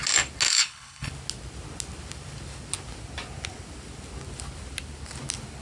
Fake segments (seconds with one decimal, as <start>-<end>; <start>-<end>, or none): 0.5-1.1